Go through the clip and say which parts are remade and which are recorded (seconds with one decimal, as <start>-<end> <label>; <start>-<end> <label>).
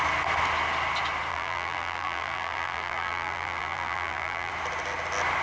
0.0-1.3 recorded; 1.3-4.5 remade; 4.5-5.4 recorded